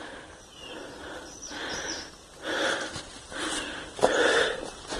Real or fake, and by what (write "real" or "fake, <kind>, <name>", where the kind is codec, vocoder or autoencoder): real